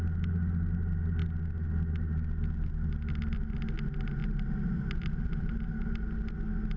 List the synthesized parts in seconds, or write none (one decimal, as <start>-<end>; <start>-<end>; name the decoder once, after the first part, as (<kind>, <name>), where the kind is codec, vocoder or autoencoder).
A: none